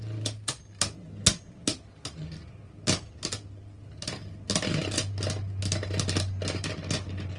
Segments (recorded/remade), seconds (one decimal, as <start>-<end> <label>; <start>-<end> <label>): 0.0-7.4 recorded